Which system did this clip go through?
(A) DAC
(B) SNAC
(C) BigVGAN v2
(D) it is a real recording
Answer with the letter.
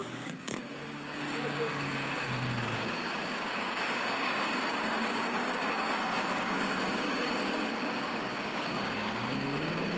A